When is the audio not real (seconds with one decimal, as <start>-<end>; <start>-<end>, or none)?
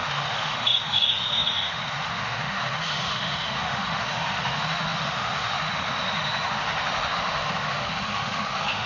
0.0-8.9